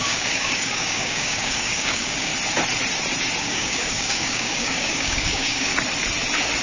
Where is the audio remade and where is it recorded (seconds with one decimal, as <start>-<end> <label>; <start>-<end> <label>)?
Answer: 0.0-2.3 remade; 2.3-3.4 recorded; 3.4-5.7 remade; 5.7-6.6 recorded